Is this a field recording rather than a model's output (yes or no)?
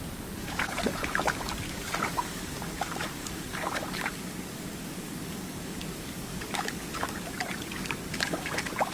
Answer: no